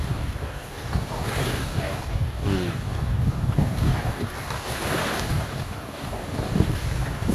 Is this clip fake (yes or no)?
yes